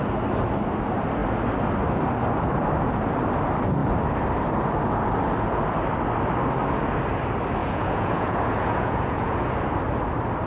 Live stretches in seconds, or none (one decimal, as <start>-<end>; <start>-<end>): 0.0-7.6; 9.6-10.5